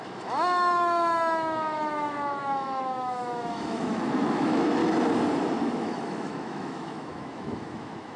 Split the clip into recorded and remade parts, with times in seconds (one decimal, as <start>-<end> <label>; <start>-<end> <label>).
0.0-4.8 remade; 4.8-5.6 recorded; 5.6-8.2 remade